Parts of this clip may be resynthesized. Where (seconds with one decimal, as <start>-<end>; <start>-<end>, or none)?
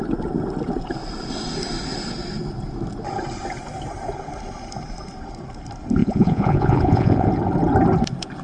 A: 6.0-7.3